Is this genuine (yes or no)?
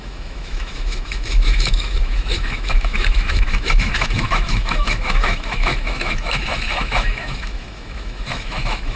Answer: no